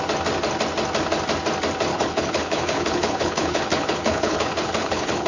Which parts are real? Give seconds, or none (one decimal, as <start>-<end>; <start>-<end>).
0.0-1.9